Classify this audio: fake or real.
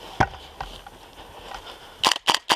real